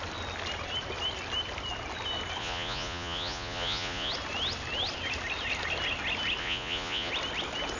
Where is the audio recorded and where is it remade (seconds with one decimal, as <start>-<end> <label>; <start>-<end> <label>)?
0.0-2.4 recorded; 2.4-4.1 remade; 4.1-6.4 recorded; 6.4-7.1 remade; 7.1-7.8 recorded